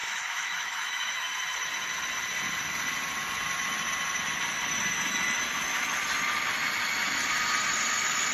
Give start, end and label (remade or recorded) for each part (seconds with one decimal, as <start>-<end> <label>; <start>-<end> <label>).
0.0-1.3 remade; 1.3-8.3 recorded